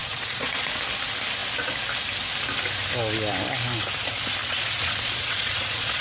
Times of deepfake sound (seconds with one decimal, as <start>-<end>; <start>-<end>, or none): 0.0-0.8; 4.4-6.0